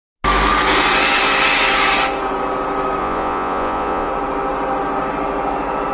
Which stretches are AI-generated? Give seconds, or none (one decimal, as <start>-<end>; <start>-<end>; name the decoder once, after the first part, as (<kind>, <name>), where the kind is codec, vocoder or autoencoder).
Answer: 3.0-4.1 (vocoder, Vocos)